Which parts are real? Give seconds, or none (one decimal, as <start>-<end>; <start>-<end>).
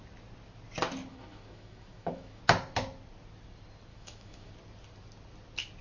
0.0-1.1; 2.4-3.9; 4.5-5.8